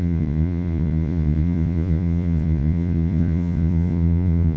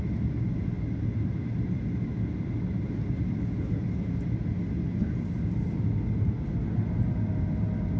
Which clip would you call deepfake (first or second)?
first